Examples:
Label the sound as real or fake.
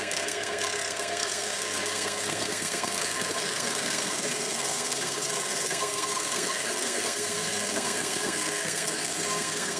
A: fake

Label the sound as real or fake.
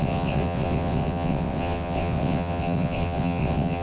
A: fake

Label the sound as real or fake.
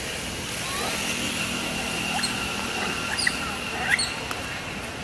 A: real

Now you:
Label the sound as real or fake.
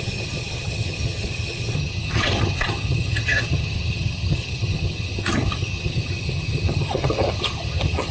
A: fake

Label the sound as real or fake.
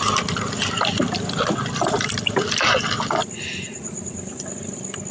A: real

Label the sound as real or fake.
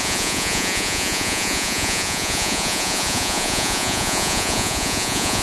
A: fake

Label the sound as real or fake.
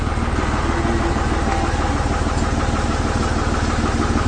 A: real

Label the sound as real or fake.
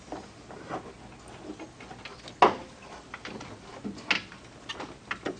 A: real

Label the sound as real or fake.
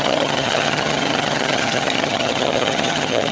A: fake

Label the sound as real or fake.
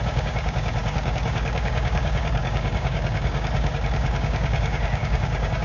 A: fake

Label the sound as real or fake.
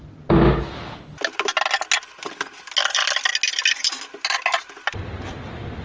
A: real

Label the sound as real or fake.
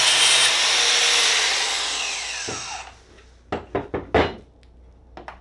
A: real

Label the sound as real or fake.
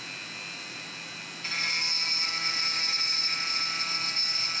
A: real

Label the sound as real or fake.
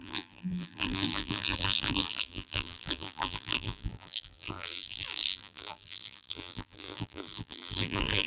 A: fake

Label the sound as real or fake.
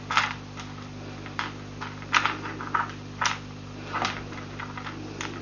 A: real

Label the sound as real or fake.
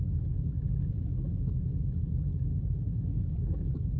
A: fake